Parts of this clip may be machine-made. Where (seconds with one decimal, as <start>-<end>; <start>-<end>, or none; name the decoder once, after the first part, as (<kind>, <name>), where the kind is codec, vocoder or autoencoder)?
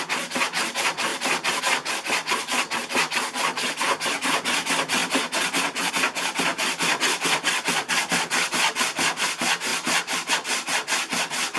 1.1-1.6 (vocoder, BigVGAN v2); 6.5-7.0; 9.7-10.3